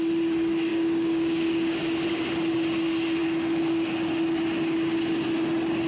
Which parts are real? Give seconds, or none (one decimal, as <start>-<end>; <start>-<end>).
0.0-0.7; 1.8-5.9